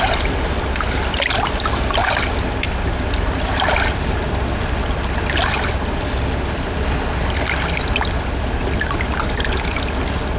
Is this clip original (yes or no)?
yes